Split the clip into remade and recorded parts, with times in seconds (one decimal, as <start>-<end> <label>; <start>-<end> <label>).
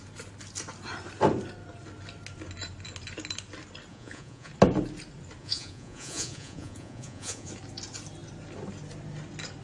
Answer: 0.0-3.9 recorded; 3.9-4.5 remade; 4.5-5.4 recorded; 5.4-7.5 remade; 7.5-9.6 recorded